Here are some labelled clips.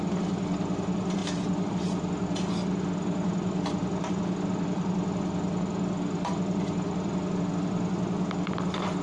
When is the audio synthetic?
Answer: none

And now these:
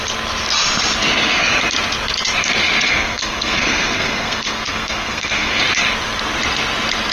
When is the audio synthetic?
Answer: 2.9-5.6 (codec, SNAC)

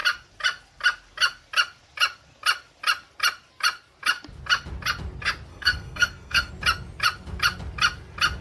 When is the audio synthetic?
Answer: 5.5-6.5 (codec, SNAC)

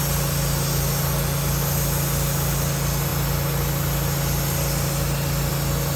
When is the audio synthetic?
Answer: none

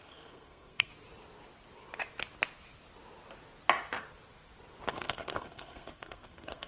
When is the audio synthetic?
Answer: 0.0-0.9 (codec, SNAC); 4.9-6.7